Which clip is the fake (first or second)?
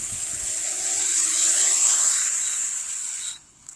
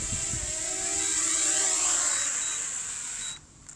first